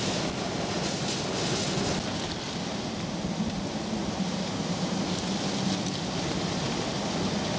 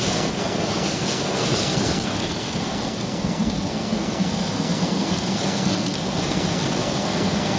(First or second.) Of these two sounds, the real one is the first